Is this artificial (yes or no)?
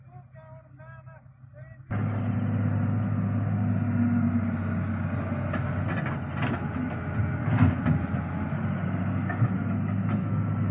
no